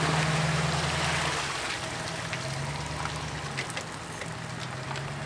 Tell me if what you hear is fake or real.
real